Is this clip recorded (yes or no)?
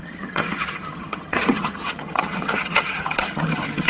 no